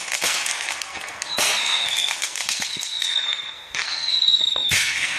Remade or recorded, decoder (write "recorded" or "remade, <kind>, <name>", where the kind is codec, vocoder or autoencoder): remade, codec, SNAC